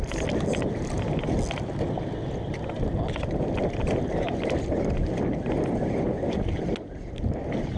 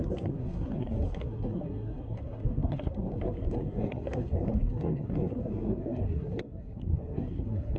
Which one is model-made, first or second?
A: second